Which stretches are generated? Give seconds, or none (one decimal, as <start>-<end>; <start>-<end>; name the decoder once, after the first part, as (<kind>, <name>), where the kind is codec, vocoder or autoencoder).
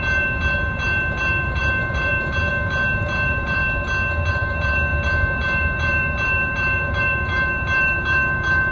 0.0-3.6 (vocoder, BigVGAN v2); 4.3-8.7